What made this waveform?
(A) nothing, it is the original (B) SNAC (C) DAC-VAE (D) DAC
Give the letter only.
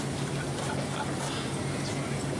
A